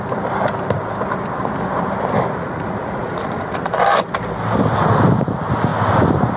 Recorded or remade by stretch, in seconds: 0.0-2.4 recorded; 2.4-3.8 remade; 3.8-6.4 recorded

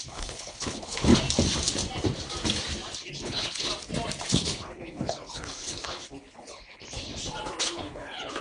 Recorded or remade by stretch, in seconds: 0.0-1.1 remade; 1.1-3.2 recorded; 3.2-3.7 remade; 3.7-4.3 recorded; 4.3-7.1 remade; 7.1-7.6 recorded; 7.6-8.4 remade

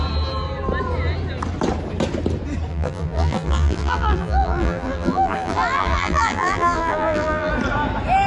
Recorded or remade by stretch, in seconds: 0.0-2.7 recorded; 2.7-7.5 remade; 7.5-8.3 recorded

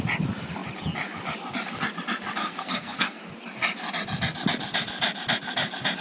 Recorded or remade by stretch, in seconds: 0.0-2.4 recorded; 2.4-3.2 remade; 3.2-6.0 recorded

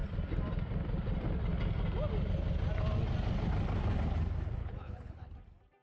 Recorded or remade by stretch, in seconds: 0.0-4.6 recorded; 4.6-5.3 remade; 5.3-5.8 recorded

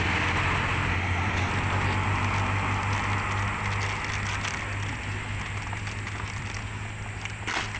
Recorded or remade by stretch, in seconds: 0.0-0.9 recorded; 0.9-1.5 remade; 1.5-7.8 recorded

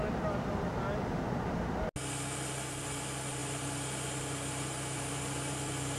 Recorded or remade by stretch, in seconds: 0.0-6.0 recorded